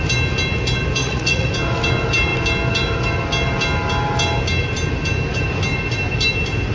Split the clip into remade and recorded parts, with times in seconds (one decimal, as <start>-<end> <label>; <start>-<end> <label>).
0.0-1.0 recorded; 1.0-1.5 remade; 1.5-6.7 recorded